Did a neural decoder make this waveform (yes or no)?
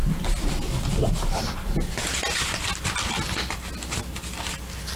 no